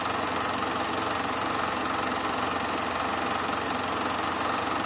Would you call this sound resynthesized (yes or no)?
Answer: no